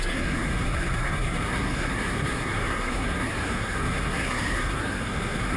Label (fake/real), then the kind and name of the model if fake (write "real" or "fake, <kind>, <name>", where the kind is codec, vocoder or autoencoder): fake, codec, SNAC